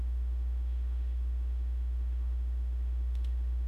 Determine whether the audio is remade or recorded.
remade